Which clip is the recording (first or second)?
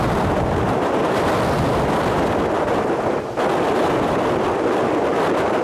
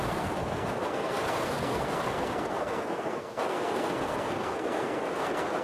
first